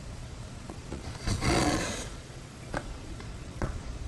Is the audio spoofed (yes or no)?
yes